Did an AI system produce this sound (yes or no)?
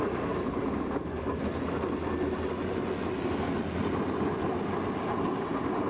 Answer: no